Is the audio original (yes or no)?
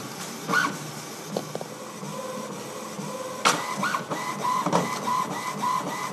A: yes